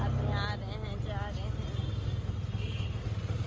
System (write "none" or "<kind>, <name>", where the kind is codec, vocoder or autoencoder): none